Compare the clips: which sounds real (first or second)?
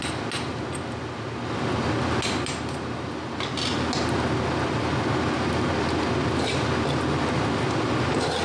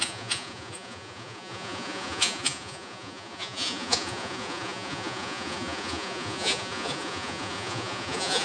first